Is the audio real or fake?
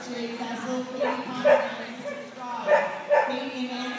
real